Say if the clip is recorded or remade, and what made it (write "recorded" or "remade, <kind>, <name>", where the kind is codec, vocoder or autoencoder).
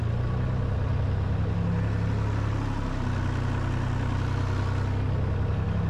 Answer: recorded